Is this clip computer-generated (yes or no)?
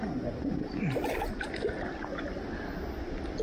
no